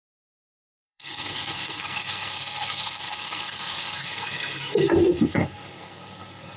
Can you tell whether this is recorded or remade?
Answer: remade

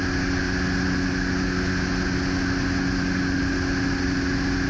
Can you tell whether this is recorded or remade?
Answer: recorded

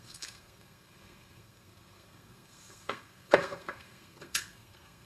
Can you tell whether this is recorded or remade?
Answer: remade